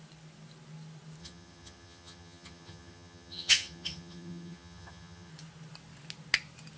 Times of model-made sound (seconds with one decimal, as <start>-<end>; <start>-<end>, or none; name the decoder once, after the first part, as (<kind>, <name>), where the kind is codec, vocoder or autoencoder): 1.2-5.3 (vocoder, HiFi-GAN)